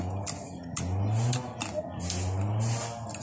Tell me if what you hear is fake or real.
real